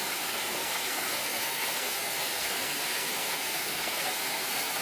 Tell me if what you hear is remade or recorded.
remade